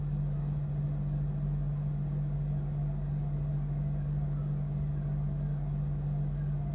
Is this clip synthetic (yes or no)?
no